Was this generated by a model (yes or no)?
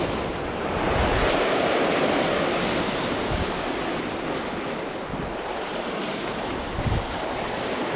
no